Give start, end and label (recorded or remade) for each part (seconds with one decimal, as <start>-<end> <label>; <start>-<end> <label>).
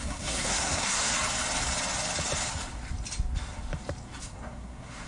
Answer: 0.0-1.1 remade; 1.1-4.2 recorded; 4.2-5.1 remade